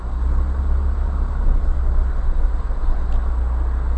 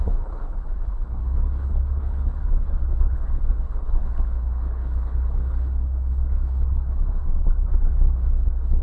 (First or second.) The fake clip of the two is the second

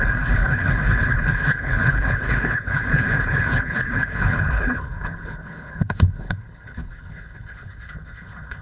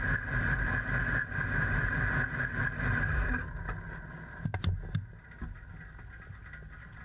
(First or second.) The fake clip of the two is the first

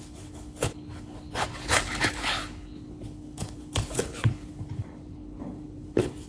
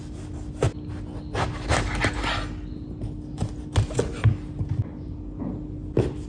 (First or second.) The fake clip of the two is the first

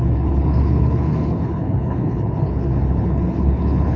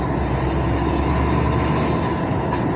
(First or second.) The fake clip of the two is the first